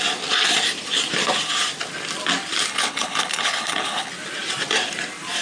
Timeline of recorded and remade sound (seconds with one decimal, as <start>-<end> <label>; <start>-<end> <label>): 0.0-2.7 recorded; 2.7-4.1 remade; 4.1-5.4 recorded